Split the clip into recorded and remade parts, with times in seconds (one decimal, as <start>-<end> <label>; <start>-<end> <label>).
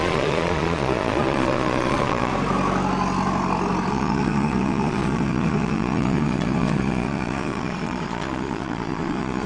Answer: 0.0-2.3 remade; 2.3-3.9 recorded; 3.9-9.5 remade